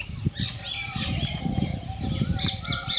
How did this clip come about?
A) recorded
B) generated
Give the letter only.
B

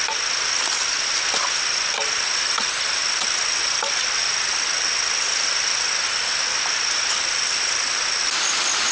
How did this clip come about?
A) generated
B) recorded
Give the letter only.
B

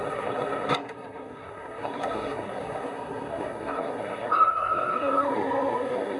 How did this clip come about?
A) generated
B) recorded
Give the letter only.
A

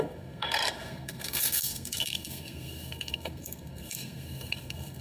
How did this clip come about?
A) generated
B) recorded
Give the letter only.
A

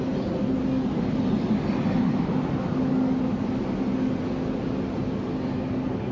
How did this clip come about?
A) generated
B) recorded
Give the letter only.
B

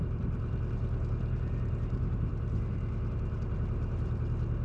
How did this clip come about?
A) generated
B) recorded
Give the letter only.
B